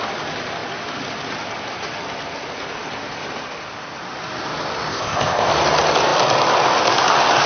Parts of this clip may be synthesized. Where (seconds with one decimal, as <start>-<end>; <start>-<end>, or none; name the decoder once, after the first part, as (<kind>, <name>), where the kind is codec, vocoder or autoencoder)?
4.9-5.5 (codec, ZipCodec)